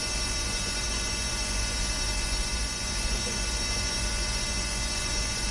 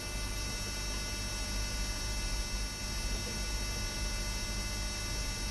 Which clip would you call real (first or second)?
second